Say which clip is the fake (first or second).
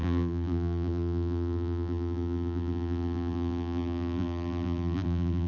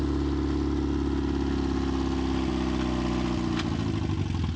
first